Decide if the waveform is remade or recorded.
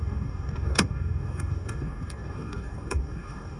remade